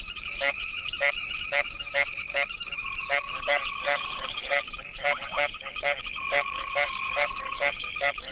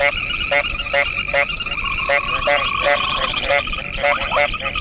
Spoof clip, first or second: first